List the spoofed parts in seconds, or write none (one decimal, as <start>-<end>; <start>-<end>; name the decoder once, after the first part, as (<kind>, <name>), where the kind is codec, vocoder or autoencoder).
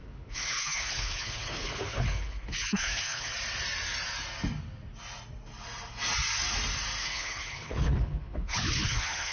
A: 0.0-3.3 (codec, HILCodec); 7.0-9.3